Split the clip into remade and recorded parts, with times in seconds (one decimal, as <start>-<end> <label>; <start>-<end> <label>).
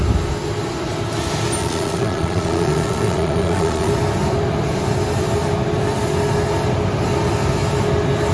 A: 0.0-1.6 recorded; 1.6-3.9 remade; 3.9-8.3 recorded